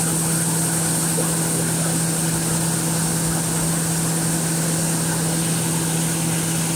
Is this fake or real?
real